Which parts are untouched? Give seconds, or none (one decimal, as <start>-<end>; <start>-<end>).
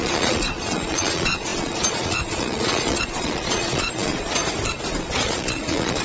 4.4-5.0